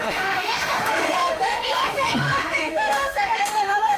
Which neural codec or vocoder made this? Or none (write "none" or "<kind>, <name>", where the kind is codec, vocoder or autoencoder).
autoencoder, DAC-VAE